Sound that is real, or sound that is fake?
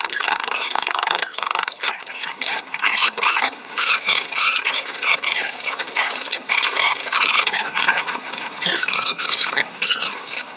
fake